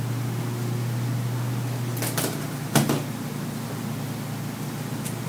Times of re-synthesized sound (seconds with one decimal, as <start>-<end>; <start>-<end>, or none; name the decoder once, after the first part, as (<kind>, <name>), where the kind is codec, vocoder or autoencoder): 1.9-5.3 (vocoder, BigVGAN v2)